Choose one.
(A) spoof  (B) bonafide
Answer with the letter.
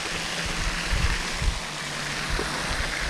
B